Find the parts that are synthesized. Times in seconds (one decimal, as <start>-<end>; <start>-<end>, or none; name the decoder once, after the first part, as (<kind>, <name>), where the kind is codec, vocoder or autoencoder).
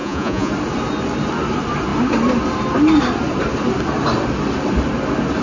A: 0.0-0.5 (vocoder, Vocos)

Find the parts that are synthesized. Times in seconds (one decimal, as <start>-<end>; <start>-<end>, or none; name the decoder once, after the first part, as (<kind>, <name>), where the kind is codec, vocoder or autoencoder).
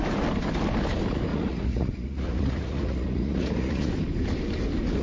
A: 1.3-3.9 (vocoder, Vocos)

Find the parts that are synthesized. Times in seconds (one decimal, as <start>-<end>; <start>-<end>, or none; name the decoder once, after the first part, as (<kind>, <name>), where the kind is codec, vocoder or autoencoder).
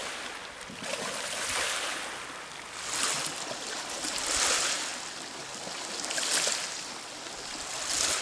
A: none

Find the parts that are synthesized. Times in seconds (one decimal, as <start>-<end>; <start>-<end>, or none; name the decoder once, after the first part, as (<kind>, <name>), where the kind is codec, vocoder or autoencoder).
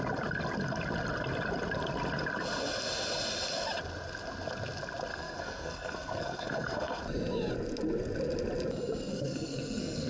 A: 5.1-7.0 (codec, SNAC); 9.1-10.1